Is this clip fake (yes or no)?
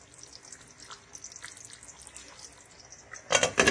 no